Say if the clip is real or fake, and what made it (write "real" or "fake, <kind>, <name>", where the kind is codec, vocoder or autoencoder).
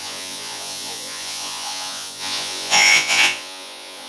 fake, vocoder, Vocos